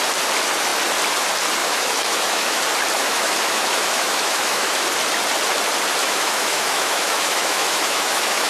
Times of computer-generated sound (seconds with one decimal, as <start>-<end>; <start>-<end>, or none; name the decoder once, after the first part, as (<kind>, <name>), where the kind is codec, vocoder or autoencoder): 1.6-2.6 (autoencoder, DAC-VAE); 3.0-4.8; 6.0-8.5